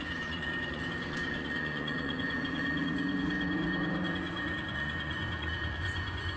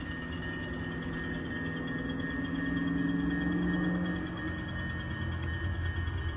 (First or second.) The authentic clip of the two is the second